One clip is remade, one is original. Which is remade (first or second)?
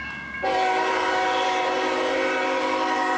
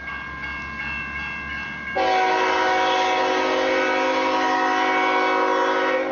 first